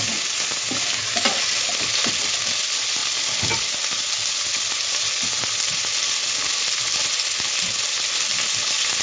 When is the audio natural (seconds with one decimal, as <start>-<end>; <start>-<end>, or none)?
0.0-9.0